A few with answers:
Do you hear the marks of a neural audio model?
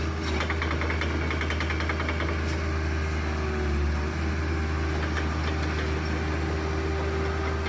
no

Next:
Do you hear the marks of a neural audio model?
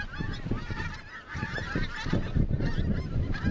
no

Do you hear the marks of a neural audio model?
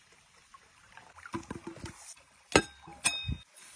no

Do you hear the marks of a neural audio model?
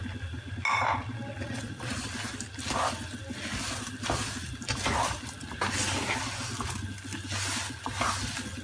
no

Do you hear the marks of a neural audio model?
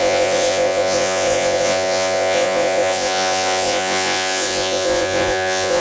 yes